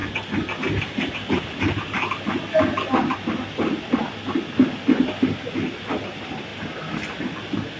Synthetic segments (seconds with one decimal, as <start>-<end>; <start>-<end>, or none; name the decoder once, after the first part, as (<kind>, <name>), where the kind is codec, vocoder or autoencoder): none